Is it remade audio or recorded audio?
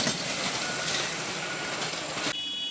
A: recorded